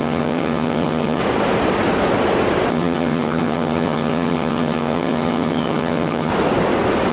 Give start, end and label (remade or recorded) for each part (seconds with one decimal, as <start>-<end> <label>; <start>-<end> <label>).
0.0-1.2 remade; 1.2-2.7 recorded; 2.7-6.3 remade; 6.3-7.1 recorded